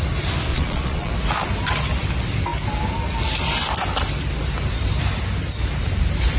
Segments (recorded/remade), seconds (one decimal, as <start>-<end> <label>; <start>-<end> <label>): 0.0-0.5 recorded; 0.5-1.1 remade; 1.1-6.4 recorded